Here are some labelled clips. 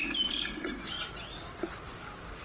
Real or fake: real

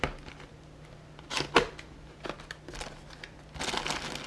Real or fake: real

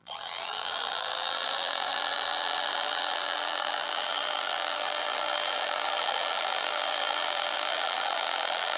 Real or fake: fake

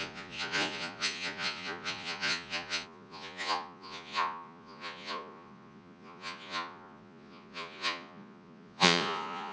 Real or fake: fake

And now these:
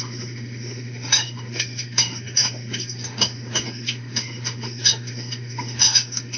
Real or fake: fake